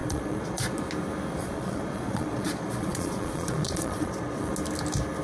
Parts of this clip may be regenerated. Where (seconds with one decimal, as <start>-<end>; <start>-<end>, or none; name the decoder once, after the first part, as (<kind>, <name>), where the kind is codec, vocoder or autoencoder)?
0.0-0.8 (vocoder, Vocos); 1.4-4.5